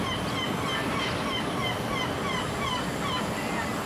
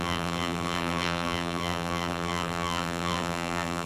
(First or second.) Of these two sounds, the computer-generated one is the second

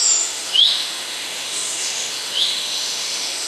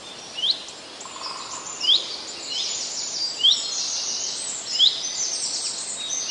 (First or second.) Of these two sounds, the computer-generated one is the first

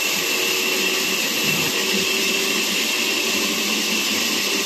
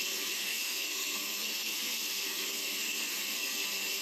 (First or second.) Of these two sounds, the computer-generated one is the second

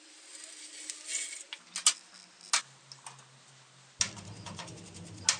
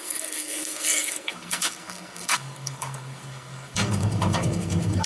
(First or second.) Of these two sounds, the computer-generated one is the second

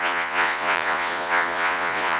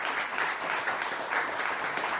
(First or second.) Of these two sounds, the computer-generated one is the first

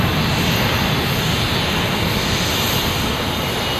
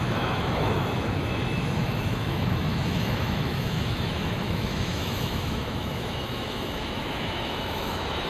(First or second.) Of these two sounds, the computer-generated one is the second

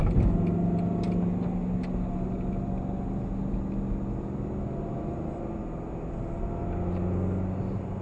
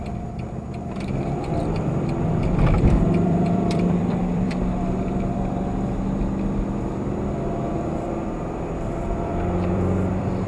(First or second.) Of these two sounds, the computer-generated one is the second